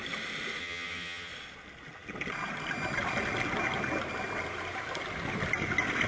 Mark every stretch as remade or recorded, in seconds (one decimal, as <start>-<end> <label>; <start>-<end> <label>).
0.0-0.6 recorded; 0.6-1.3 remade; 1.3-6.1 recorded